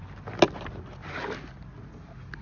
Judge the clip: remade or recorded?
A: recorded